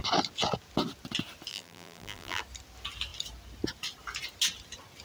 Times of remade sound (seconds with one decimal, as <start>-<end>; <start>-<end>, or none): 1.5-2.4